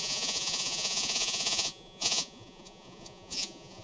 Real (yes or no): no